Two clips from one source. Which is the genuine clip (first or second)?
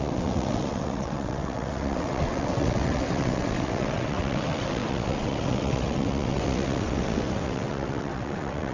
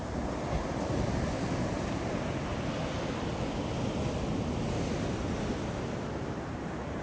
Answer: second